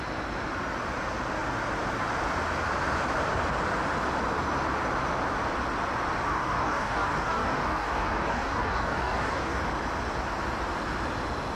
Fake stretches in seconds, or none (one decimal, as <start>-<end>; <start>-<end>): 6.3-9.7